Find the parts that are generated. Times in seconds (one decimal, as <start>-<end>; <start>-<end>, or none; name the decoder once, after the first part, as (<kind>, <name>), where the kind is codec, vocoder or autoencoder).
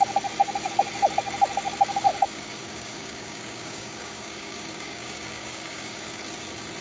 2.1-6.2 (codec, DAC)